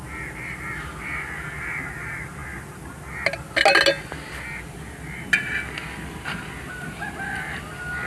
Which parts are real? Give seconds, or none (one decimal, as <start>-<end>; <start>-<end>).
0.0-8.1